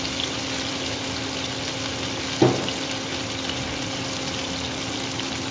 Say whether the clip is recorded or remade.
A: recorded